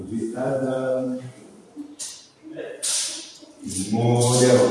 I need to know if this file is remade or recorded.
remade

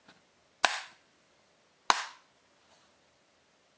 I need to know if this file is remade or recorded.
recorded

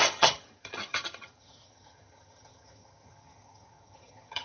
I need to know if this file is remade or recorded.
remade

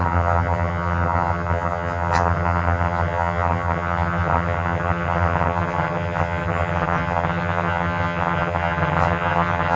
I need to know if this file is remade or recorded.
remade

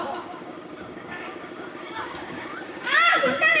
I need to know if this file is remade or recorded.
remade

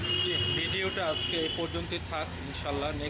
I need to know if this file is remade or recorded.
recorded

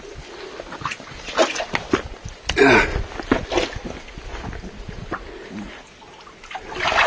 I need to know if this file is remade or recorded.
recorded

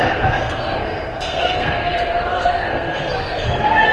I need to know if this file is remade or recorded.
remade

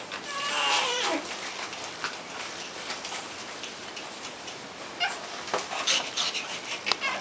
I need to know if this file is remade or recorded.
remade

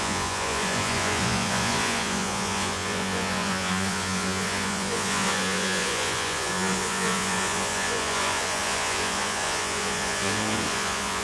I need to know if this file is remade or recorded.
remade